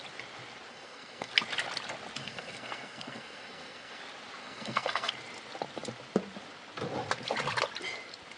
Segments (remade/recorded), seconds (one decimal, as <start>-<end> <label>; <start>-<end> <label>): 0.0-0.7 recorded; 0.7-1.3 remade; 1.3-2.2 recorded; 2.2-4.0 remade; 4.0-4.4 recorded; 4.4-5.1 remade; 5.1-8.4 recorded

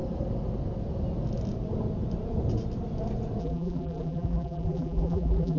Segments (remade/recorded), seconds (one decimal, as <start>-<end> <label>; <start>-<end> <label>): 0.0-3.4 recorded; 3.4-5.6 remade

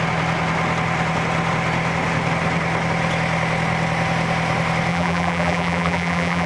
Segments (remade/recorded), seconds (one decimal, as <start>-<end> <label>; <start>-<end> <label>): 0.0-4.9 recorded; 4.9-6.5 remade

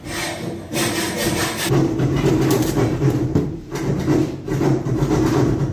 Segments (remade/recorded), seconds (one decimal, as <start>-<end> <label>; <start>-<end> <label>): 0.0-1.4 recorded; 1.4-3.8 remade; 3.8-5.7 recorded

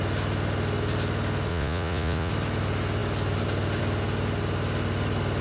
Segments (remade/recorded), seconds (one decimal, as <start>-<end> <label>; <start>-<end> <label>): 0.0-1.5 recorded; 1.5-2.3 remade; 2.3-5.4 recorded

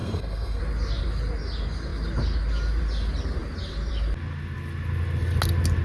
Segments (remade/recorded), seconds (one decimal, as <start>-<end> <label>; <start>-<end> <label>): 0.0-0.6 remade; 0.6-5.8 recorded

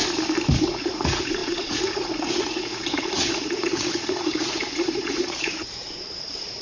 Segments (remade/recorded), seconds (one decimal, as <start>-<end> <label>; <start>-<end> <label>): 0.0-0.6 recorded; 0.6-5.8 remade; 5.8-6.6 recorded

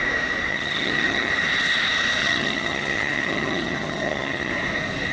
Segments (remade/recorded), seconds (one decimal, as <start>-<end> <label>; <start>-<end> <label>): 0.0-0.5 recorded; 0.5-1.3 remade; 1.3-2.2 recorded; 2.2-4.5 remade; 4.5-5.1 recorded